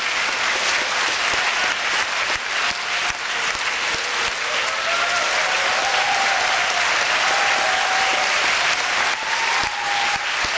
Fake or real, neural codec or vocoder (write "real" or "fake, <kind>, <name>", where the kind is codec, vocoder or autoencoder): real